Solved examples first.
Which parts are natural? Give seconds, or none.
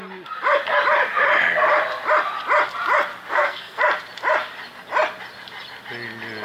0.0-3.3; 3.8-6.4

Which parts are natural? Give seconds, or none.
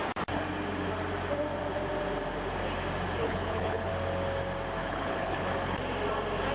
0.0-3.2; 3.9-4.8; 5.8-6.5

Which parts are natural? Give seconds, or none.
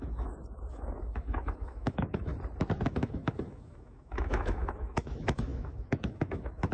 2.3-2.9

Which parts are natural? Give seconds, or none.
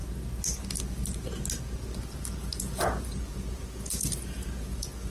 0.0-2.6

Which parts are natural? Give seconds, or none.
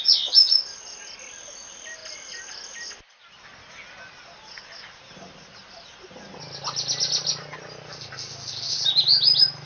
0.0-9.7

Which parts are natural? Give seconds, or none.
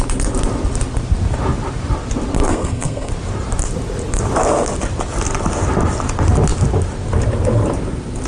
0.0-2.5; 3.1-8.3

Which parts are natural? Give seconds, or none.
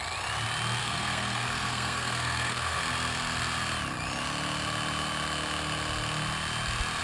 0.0-0.8; 2.8-7.0